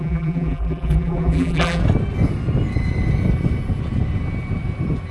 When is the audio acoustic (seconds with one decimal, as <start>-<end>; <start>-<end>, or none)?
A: 1.8-5.1